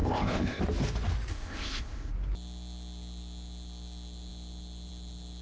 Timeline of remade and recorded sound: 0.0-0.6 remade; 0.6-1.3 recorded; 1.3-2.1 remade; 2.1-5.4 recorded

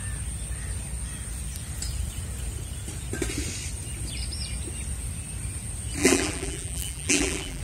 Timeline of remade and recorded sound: 0.0-6.0 recorded; 6.0-7.6 remade

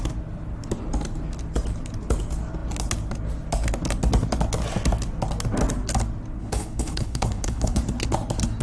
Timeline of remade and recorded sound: 0.0-6.4 recorded; 6.4-7.8 remade; 7.8-8.6 recorded